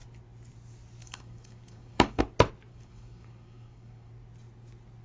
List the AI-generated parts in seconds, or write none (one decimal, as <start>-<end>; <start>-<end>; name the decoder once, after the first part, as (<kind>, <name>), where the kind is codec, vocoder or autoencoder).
1.0-2.2 (codec, DAC); 2.7-4.1